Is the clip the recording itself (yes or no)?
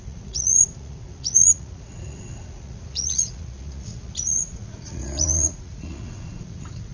no